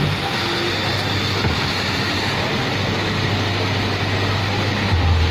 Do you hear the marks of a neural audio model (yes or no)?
no